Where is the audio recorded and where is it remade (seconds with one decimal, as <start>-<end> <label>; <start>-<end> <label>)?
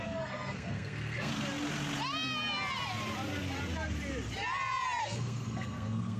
0.0-1.3 remade; 1.3-5.0 recorded; 5.0-6.2 remade